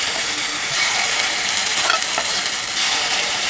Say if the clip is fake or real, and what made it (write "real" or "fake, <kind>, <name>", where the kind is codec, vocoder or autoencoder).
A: fake, vocoder, BigVGAN v2